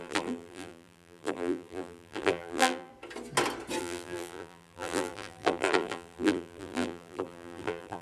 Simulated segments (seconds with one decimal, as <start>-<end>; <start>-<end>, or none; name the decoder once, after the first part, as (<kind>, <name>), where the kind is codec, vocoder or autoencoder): 0.0-2.9 (vocoder, BigVGAN v2); 3.8-8.0